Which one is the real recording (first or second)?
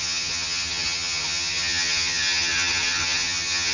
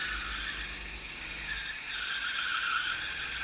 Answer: second